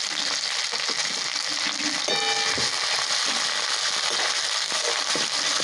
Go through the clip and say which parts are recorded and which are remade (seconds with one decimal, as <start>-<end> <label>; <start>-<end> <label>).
0.0-5.6 recorded